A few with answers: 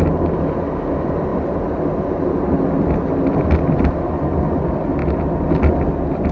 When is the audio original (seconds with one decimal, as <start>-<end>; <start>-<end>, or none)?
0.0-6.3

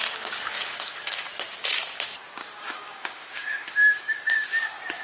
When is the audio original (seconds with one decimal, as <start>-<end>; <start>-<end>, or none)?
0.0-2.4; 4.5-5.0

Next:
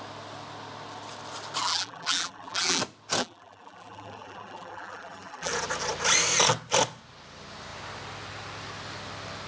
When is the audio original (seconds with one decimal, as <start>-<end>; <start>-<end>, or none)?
0.0-1.6; 2.8-3.2; 5.5-9.5